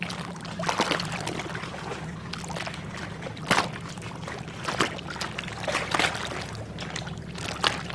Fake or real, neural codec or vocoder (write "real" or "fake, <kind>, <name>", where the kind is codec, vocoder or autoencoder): real